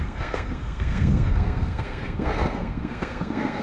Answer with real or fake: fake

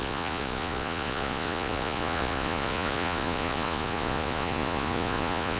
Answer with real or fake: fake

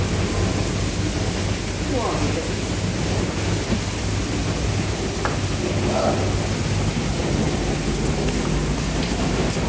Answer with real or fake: real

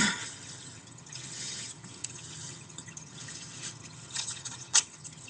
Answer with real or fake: fake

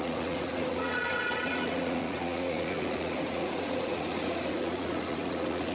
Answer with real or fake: fake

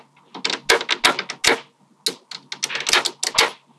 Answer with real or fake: real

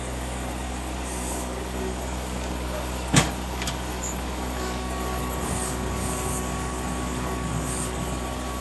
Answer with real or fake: fake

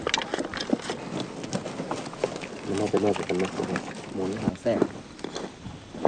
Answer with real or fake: real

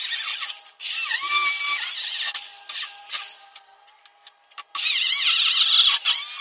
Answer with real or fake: real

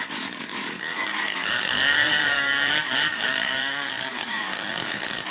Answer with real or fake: fake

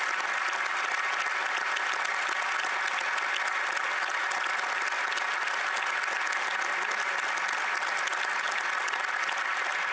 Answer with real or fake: real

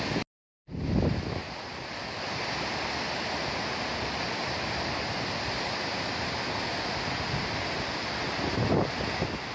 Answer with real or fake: real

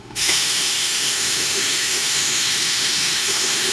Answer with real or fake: fake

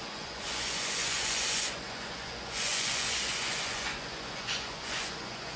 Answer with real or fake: fake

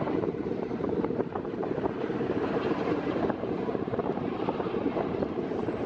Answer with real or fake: fake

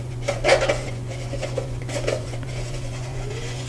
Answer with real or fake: fake